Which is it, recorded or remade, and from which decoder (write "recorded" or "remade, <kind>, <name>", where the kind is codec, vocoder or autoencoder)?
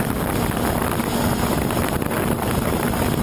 recorded